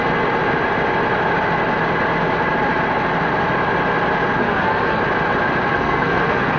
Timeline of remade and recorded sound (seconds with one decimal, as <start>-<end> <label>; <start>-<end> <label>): 0.0-4.4 recorded; 4.4-5.0 remade; 5.0-5.7 recorded; 5.7-6.6 remade